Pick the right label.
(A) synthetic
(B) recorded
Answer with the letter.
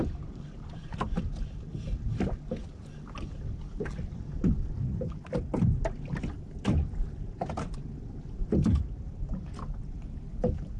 B